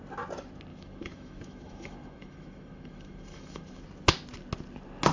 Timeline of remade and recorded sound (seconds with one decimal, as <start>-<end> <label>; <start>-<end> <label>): 0.0-0.7 recorded; 0.7-3.8 remade; 3.8-5.1 recorded